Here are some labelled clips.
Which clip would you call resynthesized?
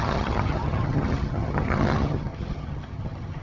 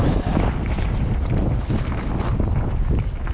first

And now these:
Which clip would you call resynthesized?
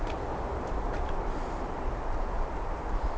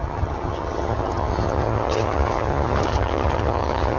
second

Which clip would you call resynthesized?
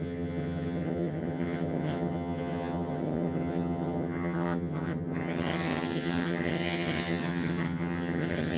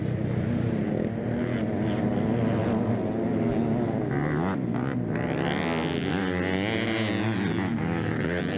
first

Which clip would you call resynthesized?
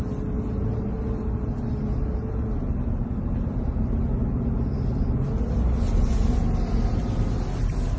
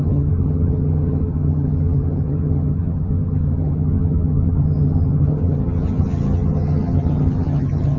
second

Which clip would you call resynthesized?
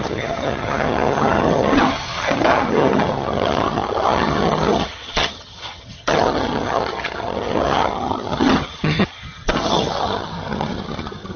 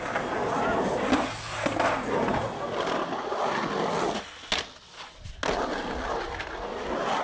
first